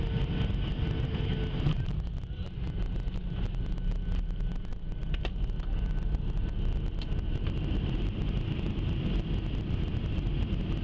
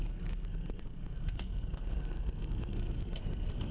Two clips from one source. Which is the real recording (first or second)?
first